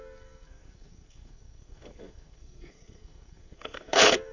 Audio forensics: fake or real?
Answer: fake